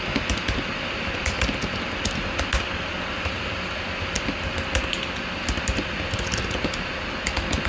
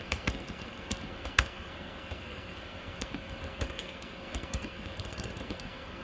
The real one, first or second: first